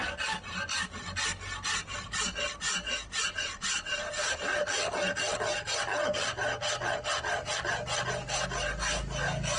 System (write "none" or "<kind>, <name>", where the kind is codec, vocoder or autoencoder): none